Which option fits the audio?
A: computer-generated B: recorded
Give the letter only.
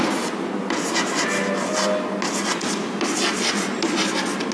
B